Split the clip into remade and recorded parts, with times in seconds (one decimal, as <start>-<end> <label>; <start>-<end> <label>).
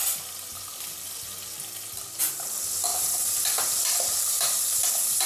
0.0-2.9 recorded; 2.9-4.8 remade; 4.8-5.3 recorded